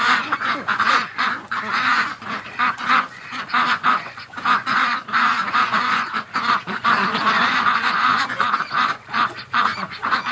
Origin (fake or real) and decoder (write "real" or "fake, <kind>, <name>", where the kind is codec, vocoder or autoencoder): fake, vocoder, Vocos